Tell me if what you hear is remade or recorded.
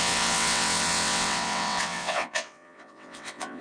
remade